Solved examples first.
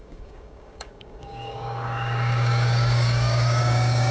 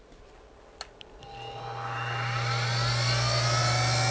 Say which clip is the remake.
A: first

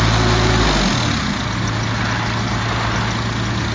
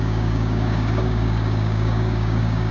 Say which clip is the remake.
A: second